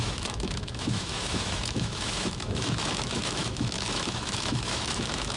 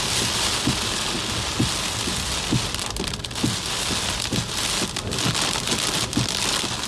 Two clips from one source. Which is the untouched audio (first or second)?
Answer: second